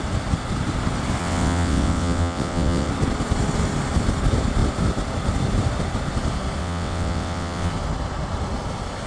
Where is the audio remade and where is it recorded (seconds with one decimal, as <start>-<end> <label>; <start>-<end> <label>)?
0.0-1.2 recorded; 1.2-2.9 remade; 2.9-6.6 recorded; 6.6-7.7 remade; 7.7-9.1 recorded